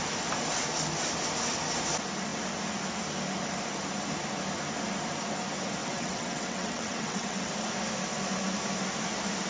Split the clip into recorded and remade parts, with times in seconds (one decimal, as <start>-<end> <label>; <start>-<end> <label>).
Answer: 0.0-5.8 recorded; 5.8-7.5 remade; 7.5-9.5 recorded